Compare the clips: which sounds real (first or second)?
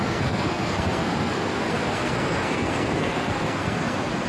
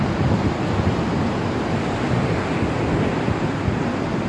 second